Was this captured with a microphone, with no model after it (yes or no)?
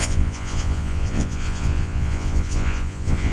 no